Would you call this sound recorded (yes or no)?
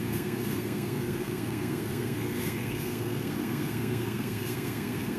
no